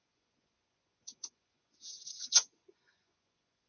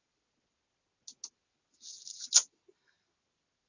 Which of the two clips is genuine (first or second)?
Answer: second